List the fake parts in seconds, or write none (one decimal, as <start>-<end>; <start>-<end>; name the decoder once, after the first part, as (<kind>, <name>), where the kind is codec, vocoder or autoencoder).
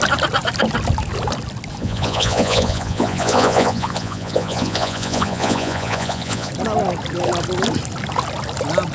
1.8-6.5 (vocoder, Vocos)